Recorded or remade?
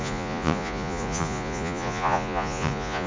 remade